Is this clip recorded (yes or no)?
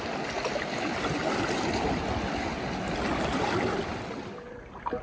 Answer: yes